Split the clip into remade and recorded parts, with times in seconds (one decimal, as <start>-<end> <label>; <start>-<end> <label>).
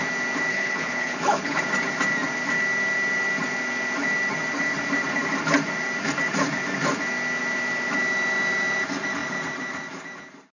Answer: 0.0-0.5 recorded; 0.5-1.6 remade; 1.6-10.6 recorded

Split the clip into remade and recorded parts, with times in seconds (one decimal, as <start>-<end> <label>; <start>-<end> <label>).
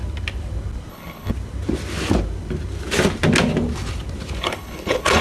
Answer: 0.0-0.9 recorded; 0.9-1.3 remade; 1.3-4.4 recorded; 4.4-5.2 remade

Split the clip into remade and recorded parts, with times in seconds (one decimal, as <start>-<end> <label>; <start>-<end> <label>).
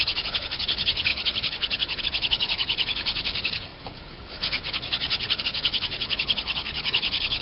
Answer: 0.0-7.4 remade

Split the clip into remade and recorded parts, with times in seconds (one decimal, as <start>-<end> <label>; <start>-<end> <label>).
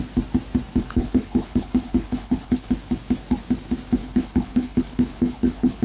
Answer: 0.0-0.8 recorded; 0.8-2.7 remade; 2.7-4.0 recorded; 4.0-5.8 remade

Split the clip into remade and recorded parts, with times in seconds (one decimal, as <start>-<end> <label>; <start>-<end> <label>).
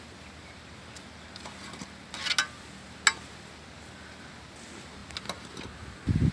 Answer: 0.0-6.3 recorded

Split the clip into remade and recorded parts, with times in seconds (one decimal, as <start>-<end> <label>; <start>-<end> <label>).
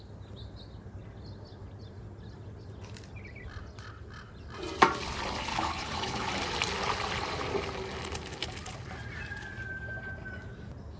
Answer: 0.0-5.5 recorded; 5.5-6.3 remade; 6.3-11.0 recorded